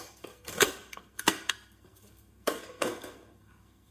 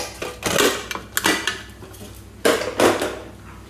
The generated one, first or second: first